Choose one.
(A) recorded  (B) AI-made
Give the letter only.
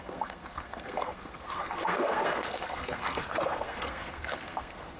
B